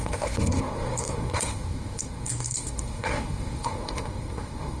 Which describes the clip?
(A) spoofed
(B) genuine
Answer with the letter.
A